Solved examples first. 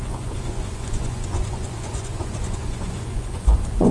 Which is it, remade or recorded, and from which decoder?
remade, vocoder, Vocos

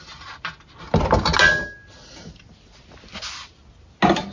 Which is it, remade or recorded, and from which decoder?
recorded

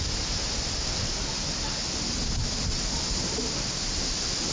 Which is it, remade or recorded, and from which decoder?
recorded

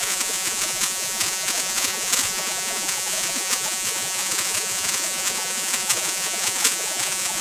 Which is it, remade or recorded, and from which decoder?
remade, vocoder, Vocos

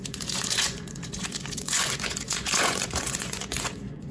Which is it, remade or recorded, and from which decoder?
remade, vocoder, Vocos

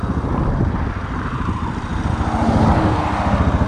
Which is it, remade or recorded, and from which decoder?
recorded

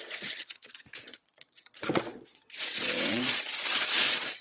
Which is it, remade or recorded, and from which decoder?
remade, vocoder, Vocos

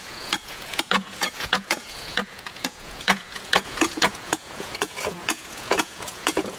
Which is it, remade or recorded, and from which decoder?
remade, vocoder, Vocos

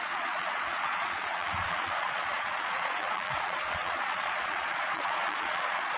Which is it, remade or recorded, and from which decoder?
remade, vocoder, Vocos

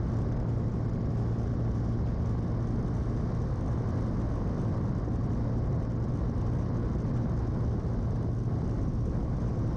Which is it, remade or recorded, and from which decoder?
recorded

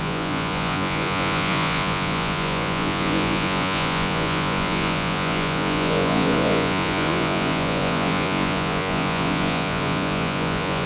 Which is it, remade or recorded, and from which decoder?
remade, vocoder, Vocos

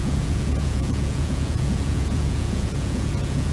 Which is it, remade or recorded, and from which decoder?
remade, vocoder, Vocos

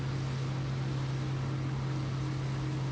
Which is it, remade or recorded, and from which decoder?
recorded